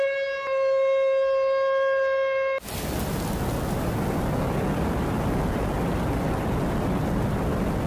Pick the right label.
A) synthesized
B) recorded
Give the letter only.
B